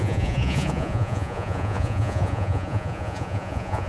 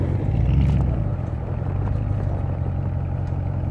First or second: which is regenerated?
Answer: first